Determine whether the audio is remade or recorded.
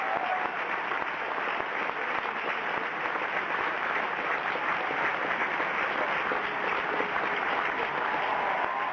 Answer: recorded